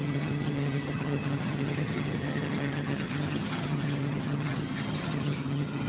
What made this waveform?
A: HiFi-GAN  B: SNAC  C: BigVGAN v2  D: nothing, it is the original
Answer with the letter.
A